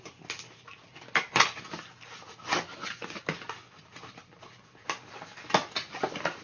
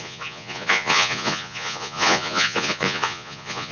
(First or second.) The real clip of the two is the first